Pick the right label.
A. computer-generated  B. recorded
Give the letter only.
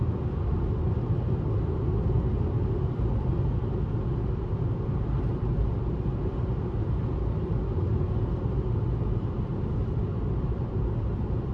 B